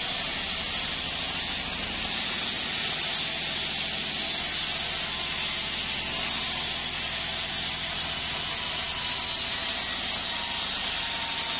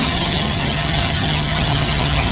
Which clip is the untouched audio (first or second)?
first